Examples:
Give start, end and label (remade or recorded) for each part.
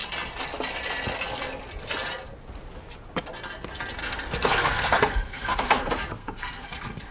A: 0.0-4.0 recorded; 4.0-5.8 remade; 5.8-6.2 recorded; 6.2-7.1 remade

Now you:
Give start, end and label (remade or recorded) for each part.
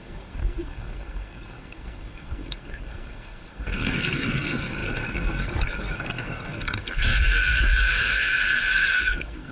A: 0.0-9.5 remade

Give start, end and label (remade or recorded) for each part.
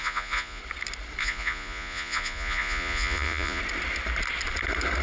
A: 0.0-0.6 remade; 0.6-1.2 recorded; 1.2-3.6 remade; 3.6-5.0 recorded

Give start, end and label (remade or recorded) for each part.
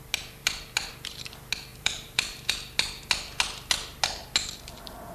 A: 0.0-1.7 recorded; 1.7-2.5 remade; 2.5-5.1 recorded